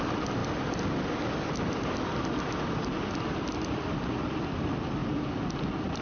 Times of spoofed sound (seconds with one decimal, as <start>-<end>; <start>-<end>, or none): none